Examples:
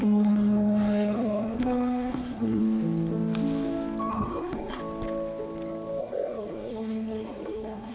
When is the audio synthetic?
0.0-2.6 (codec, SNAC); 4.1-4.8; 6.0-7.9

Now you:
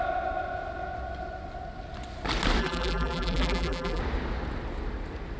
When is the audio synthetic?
2.6-4.0 (vocoder, BigVGAN v2)

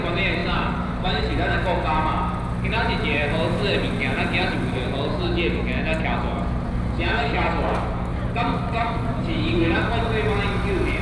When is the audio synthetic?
0.4-1.2 (vocoder, BigVGAN v2); 8.1-9.6

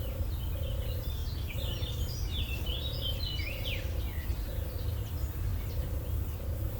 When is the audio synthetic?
none